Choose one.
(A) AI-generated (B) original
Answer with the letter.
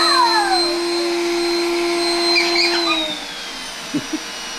B